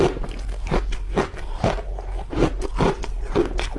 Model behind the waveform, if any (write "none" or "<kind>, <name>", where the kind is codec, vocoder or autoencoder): none